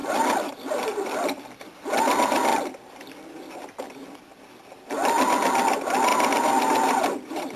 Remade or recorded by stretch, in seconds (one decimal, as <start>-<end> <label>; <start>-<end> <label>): 0.0-2.5 recorded; 2.5-4.9 remade; 4.9-6.1 recorded; 6.1-7.6 remade